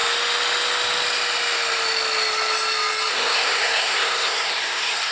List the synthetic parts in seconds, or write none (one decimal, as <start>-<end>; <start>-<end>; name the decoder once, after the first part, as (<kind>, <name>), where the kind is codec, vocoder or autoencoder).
3.1-5.1 (codec, SNAC)